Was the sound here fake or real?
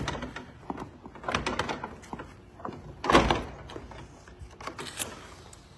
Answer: real